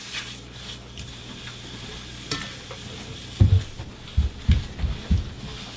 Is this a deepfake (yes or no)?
no